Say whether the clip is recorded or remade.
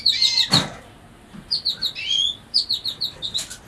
recorded